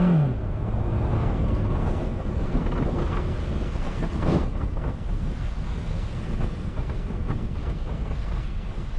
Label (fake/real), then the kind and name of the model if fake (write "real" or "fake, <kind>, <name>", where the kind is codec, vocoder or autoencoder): fake, codec, SNAC